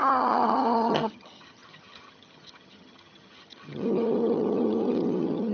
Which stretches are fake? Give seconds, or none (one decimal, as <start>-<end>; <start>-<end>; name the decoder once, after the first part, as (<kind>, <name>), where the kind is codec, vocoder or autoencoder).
0.0-5.5 (vocoder, HiFi-GAN)